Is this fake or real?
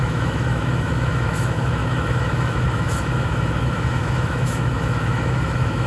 fake